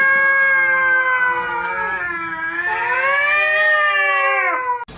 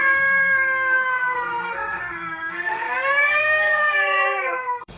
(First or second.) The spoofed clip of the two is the second